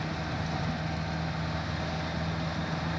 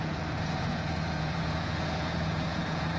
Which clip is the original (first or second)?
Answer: first